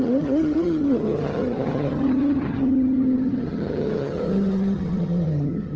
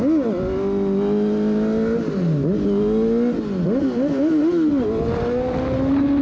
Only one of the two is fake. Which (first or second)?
first